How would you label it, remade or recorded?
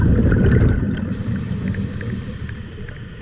recorded